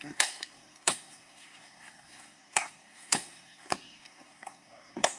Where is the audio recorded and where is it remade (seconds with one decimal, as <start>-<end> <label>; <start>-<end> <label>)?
0.0-5.2 remade